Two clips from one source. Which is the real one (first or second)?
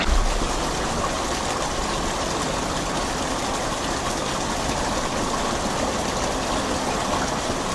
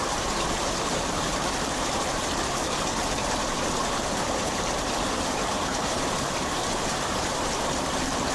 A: first